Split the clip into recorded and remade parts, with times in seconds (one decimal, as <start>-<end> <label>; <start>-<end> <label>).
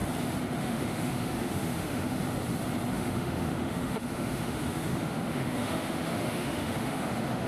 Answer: 0.0-0.6 recorded; 0.6-2.2 remade; 2.2-2.9 recorded; 2.9-7.5 remade